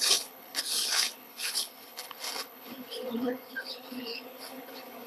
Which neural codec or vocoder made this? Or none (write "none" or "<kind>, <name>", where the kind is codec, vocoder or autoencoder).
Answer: codec, HILCodec